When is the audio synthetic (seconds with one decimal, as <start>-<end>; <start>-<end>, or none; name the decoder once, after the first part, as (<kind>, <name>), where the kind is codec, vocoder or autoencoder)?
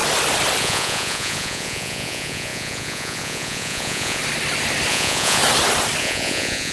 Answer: 0.6-4.2 (vocoder, Vocos); 4.9-5.4; 6.0-6.7